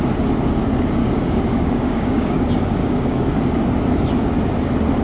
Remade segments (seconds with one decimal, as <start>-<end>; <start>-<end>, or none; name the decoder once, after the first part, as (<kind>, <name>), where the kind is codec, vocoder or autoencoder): 1.0-2.4 (codec, DAC); 2.8-3.4